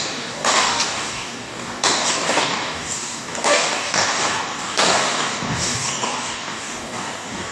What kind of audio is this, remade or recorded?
remade